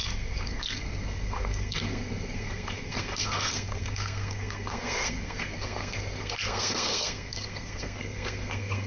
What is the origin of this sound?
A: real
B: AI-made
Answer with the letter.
B